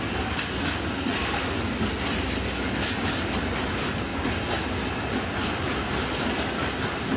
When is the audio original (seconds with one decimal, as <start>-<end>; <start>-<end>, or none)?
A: 0.0-7.2